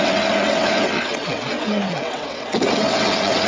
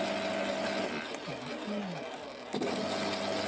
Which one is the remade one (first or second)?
first